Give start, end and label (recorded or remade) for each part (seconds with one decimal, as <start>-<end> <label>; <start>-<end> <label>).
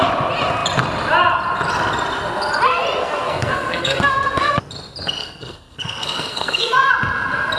0.0-3.0 recorded; 3.0-4.6 remade; 4.6-5.2 recorded; 5.2-6.9 remade; 6.9-7.6 recorded